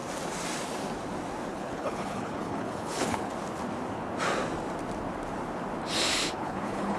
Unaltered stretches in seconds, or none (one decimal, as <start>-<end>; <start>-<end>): 0.0-1.5; 3.3-6.2